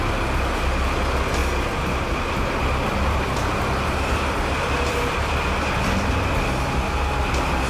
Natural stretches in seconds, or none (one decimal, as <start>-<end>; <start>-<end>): 0.0-1.4; 5.8-7.7